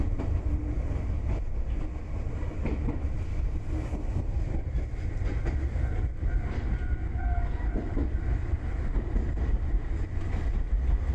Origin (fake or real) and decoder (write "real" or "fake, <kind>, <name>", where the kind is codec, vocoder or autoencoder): fake, vocoder, BigVGAN v2